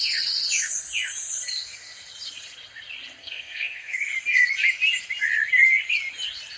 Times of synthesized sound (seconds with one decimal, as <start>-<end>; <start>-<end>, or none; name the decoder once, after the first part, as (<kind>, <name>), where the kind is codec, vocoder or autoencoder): 3.2-4.1 (codec, SNAC)